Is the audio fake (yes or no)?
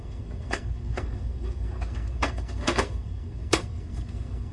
yes